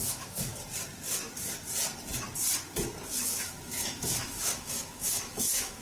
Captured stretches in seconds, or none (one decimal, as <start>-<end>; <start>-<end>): 0.5-3.1